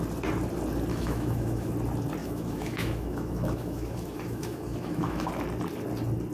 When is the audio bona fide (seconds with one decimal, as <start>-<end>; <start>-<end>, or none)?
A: 0.0-0.9; 1.7-2.2; 5.3-6.3